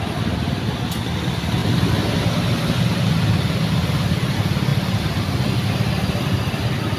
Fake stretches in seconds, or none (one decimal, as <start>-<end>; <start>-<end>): 1.6-3.0; 4.7-7.0